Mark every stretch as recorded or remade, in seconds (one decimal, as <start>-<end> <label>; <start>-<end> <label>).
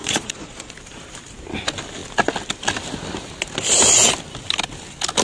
0.0-0.7 remade; 0.7-5.2 recorded